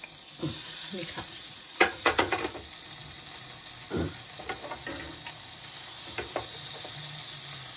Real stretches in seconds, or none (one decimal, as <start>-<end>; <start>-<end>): 0.0-0.6; 2.4-7.8